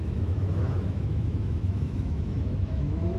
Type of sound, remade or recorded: remade